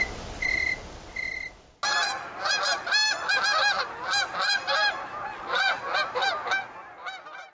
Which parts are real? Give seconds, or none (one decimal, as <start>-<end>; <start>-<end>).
0.0-7.5